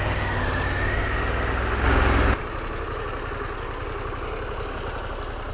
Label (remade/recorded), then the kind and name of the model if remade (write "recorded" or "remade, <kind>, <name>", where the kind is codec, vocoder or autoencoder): recorded